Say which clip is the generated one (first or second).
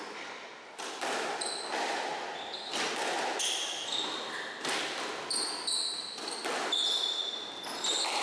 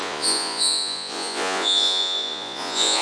second